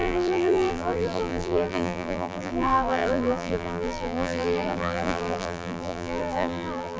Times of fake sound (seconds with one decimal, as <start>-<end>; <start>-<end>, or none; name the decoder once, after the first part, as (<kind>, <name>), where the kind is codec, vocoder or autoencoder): 0.0-7.0 (vocoder, BigVGAN v2)